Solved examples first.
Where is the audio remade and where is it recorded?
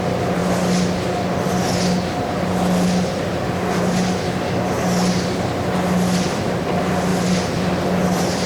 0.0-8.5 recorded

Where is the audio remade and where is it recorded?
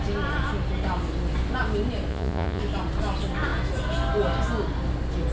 0.0-2.1 recorded; 2.1-2.6 remade; 2.6-5.3 recorded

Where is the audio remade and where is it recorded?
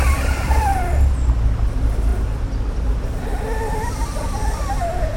0.0-5.2 recorded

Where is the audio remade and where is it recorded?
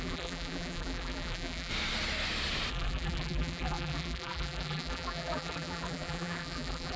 0.0-1.7 remade; 1.7-2.7 recorded; 2.7-7.0 remade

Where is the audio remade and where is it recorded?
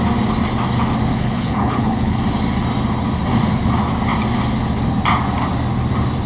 0.0-1.1 recorded; 1.1-2.2 remade; 2.2-6.3 recorded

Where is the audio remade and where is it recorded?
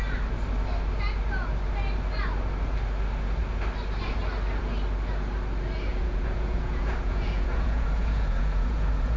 0.0-5.9 recorded; 5.9-9.2 remade